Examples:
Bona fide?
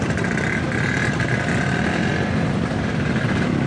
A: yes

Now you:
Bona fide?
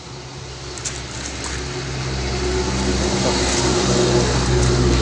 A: yes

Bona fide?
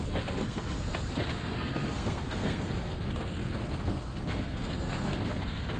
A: no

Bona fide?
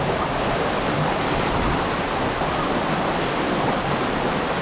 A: yes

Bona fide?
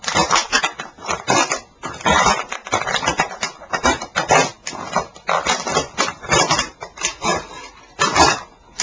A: yes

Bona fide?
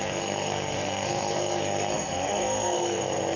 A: no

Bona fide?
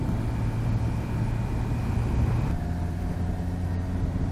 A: yes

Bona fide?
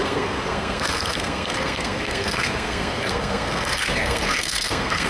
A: no